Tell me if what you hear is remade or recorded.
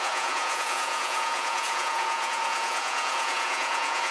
remade